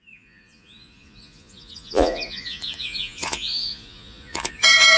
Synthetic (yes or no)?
yes